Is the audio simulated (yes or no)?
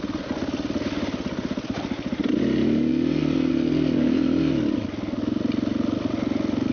no